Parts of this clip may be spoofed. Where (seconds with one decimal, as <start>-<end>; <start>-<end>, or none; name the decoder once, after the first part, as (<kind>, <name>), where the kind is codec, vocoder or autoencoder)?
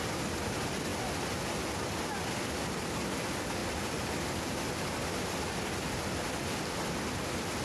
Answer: none